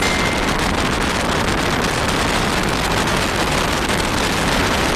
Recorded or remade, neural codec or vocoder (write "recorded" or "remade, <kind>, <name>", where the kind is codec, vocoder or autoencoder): recorded